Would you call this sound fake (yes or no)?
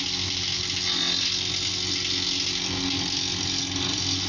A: no